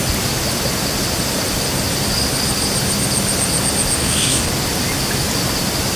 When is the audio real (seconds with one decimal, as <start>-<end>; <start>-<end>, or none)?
0.0-4.0; 4.5-6.0